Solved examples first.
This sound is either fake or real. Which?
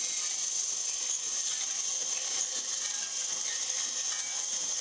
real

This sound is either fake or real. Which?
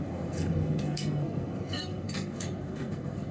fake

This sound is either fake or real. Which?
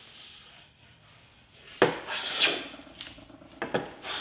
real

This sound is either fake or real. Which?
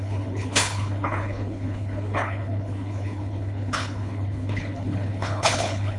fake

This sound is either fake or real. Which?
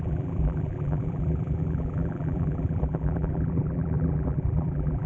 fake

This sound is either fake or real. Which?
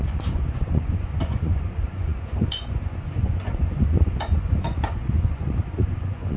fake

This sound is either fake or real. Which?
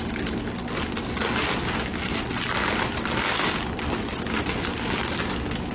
real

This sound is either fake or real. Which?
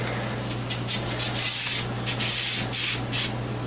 real